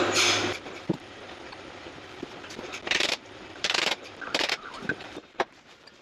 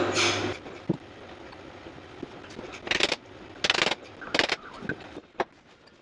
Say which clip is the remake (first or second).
first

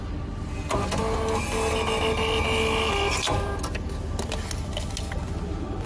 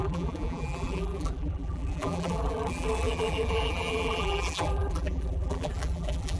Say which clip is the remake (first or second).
second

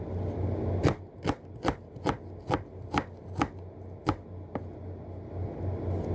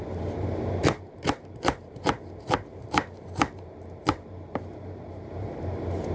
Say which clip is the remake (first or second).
second